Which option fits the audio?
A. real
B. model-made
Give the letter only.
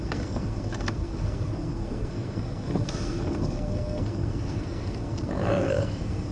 B